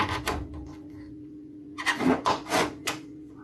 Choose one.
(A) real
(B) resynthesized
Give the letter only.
B